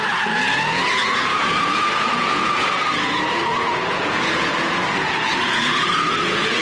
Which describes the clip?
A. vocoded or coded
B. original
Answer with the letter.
A